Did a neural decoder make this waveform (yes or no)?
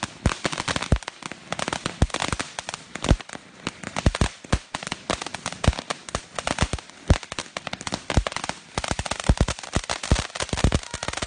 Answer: no